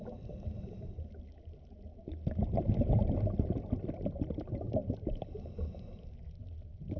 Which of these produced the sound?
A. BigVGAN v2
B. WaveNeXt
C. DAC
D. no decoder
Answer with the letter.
D